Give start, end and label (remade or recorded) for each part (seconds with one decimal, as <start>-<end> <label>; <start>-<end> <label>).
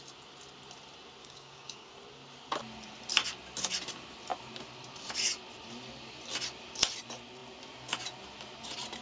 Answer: 0.0-1.2 recorded; 1.2-1.9 remade; 1.9-9.0 recorded